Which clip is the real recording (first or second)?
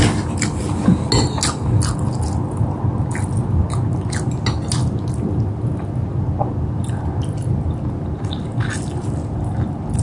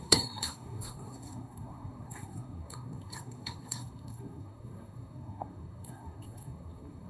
first